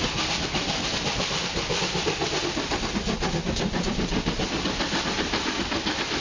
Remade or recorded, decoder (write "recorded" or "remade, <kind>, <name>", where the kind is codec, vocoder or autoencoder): recorded